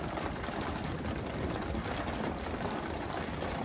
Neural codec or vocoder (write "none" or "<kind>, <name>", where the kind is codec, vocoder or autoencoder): none